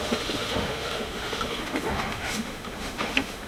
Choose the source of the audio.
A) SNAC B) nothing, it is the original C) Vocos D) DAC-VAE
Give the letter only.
D